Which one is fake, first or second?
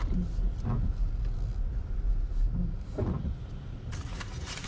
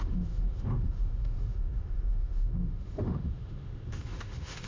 second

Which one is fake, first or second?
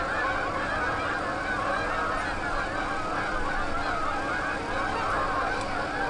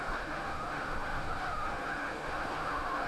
second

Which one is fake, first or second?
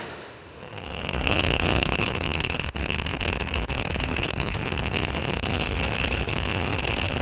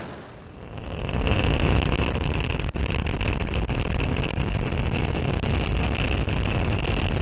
first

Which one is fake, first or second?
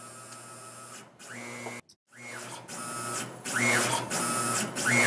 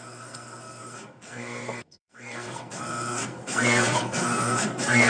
second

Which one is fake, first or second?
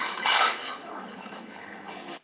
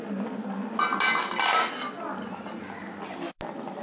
first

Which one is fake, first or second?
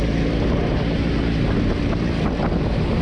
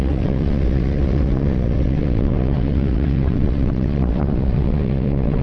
second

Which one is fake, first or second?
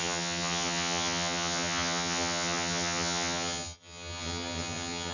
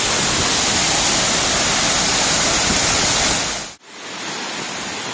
first